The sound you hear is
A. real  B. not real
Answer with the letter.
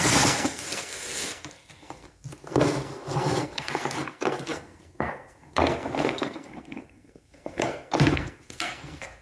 B